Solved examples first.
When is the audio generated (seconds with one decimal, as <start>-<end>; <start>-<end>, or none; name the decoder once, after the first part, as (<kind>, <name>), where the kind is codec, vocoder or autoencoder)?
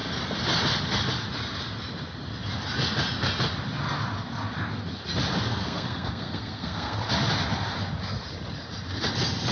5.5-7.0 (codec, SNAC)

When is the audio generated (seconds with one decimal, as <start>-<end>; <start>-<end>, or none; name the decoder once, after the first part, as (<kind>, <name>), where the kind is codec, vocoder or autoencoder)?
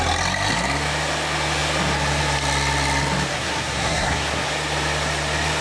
3.3-4.5 (codec, SNAC)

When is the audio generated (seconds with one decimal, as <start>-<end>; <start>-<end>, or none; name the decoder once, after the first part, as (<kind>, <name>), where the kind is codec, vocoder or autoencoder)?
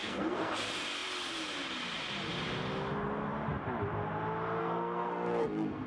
0.0-0.5 (codec, SNAC); 4.6-5.9